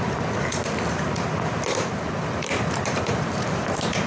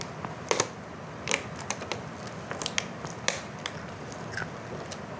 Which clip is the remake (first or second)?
first